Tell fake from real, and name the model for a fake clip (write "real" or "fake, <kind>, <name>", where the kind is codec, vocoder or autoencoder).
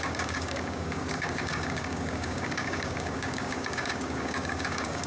fake, codec, DAC